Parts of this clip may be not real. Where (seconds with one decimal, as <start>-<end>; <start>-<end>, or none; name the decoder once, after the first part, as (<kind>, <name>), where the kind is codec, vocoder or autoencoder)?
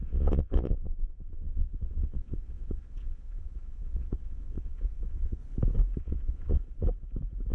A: 0.0-5.4 (vocoder, Vocos); 6.0-6.6